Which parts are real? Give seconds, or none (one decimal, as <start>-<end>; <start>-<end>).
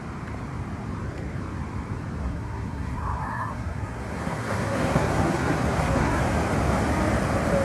0.0-2.2; 6.2-7.6